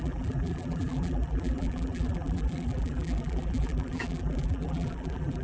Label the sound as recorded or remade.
remade